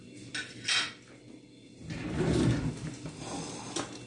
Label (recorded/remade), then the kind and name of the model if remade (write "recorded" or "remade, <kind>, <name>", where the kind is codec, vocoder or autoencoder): recorded